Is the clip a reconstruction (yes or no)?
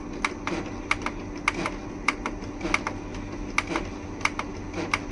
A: no